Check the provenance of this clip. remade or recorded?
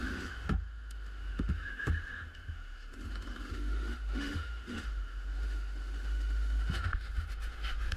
remade